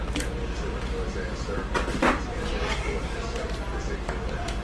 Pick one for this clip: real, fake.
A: fake